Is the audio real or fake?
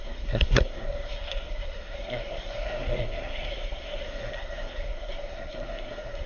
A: fake